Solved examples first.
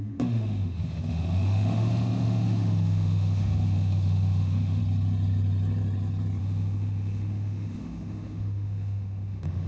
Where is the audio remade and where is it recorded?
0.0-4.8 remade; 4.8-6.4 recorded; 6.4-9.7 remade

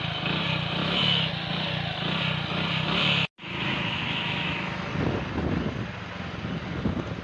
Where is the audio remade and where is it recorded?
0.0-0.8 recorded; 0.8-1.3 remade; 1.3-3.4 recorded; 3.4-4.9 remade; 4.9-7.2 recorded